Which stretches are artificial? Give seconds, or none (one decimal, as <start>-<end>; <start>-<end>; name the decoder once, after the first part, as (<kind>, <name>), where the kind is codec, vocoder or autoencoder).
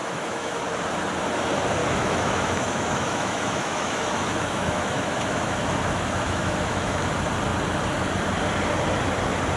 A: 0.0-0.6 (autoencoder, DAC-VAE); 1.8-7.0